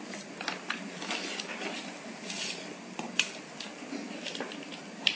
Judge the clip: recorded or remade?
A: recorded